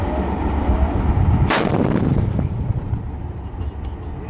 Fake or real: real